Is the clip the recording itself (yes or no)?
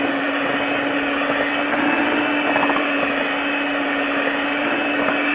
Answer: no